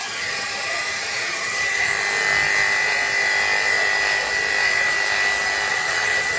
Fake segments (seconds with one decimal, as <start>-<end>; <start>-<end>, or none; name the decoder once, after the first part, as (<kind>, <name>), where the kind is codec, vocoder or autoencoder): 0.0-1.9 (vocoder, HiFi-GAN); 5.7-6.4